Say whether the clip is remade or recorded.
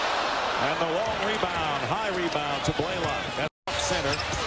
recorded